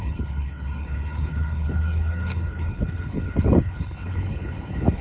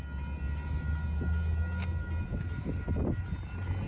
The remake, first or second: first